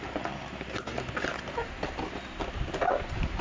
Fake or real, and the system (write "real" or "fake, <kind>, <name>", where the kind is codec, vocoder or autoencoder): real